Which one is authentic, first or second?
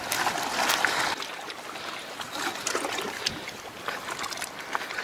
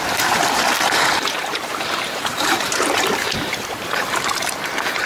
first